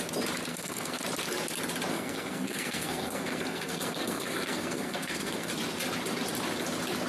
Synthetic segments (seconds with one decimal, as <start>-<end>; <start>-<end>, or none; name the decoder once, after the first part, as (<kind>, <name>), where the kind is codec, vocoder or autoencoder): 0.5-1.0 (codec, SNAC); 1.9-5.5